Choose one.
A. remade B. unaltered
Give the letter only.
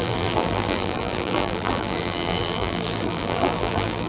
A